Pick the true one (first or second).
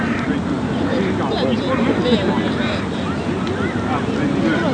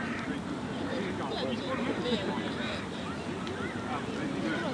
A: first